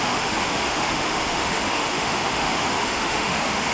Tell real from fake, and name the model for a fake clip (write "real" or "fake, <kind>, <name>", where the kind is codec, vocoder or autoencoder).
fake, autoencoder, DAC-VAE